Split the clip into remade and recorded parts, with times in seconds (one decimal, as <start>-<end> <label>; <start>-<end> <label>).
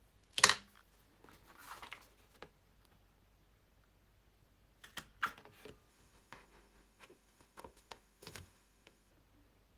0.0-5.9 recorded; 5.9-9.1 remade; 9.1-9.8 recorded